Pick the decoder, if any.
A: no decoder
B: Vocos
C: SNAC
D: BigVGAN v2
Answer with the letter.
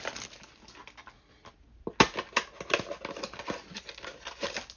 A